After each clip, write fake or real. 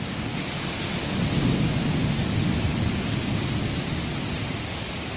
real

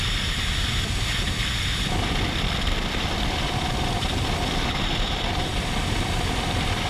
fake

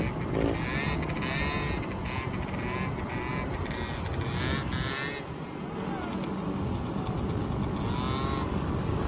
real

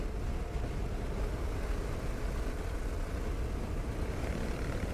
real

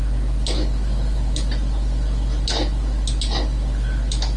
real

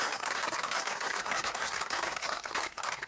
fake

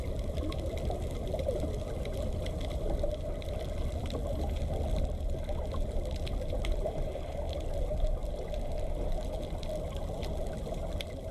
real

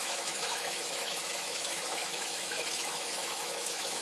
fake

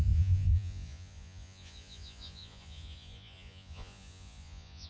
fake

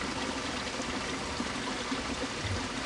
real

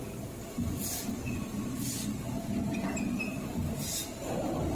real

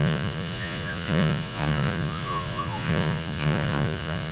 fake